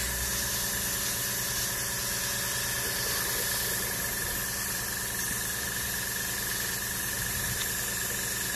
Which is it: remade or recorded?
recorded